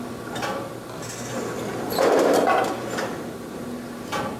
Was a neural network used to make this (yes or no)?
no